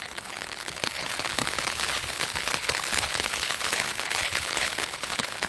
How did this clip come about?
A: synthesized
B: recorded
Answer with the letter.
A